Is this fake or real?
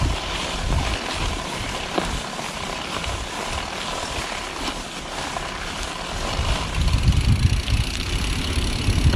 real